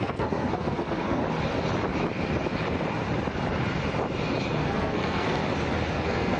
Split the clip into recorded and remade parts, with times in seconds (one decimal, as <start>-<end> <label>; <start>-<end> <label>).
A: 0.0-1.2 remade; 1.2-4.6 recorded; 4.6-5.4 remade; 5.4-5.9 recorded; 5.9-6.4 remade